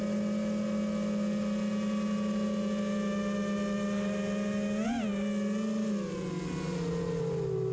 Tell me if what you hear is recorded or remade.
recorded